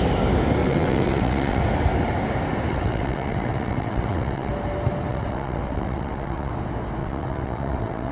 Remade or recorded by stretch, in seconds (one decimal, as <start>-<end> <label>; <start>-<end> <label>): 0.0-0.6 recorded; 0.6-1.6 remade; 1.6-2.7 recorded; 2.7-4.5 remade; 4.5-5.1 recorded; 5.1-6.5 remade; 6.5-7.0 recorded; 7.0-8.1 remade